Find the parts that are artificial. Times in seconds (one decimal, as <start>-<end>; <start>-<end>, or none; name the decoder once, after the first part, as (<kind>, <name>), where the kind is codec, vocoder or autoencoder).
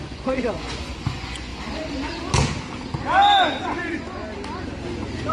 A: 0.0-1.5 (vocoder, Vocos); 3.6-4.2